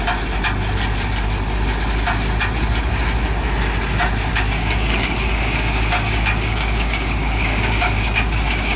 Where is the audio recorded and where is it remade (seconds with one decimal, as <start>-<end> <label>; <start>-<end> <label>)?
0.0-4.3 recorded; 4.3-8.8 remade